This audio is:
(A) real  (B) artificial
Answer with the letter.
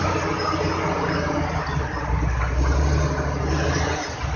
A